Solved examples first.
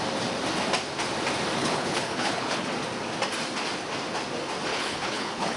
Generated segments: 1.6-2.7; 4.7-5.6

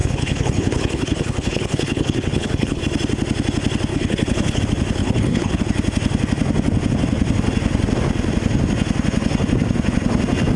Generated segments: 0.0-2.8; 3.9-4.6; 5.0-5.6